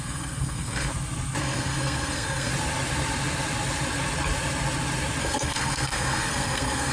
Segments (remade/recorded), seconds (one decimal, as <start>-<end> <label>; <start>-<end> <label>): 0.0-0.9 remade; 0.9-1.4 recorded; 1.4-2.5 remade; 2.5-5.2 recorded; 5.2-6.9 remade